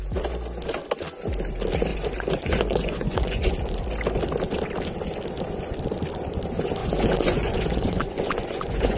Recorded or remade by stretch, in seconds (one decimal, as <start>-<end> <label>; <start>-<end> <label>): 0.0-1.9 recorded; 1.9-3.5 remade; 3.5-6.8 recorded; 6.8-9.0 remade